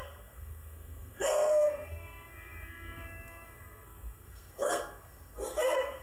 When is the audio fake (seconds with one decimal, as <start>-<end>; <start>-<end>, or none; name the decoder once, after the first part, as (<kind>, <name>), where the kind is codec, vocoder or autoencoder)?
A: 0.0-6.0 (codec, SNAC)